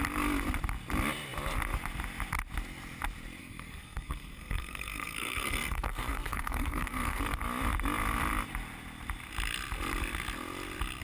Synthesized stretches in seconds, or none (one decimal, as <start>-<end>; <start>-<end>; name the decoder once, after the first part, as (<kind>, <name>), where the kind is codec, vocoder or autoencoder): 3.4-7.2 (codec, SNAC)